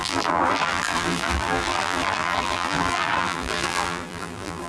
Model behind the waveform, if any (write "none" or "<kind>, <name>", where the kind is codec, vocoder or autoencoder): vocoder, BigVGAN v2